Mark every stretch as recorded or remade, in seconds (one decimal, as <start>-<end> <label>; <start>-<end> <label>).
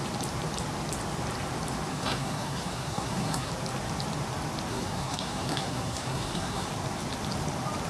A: 0.0-1.9 recorded; 1.9-3.5 remade; 3.5-4.7 recorded; 4.7-6.7 remade; 6.7-7.9 recorded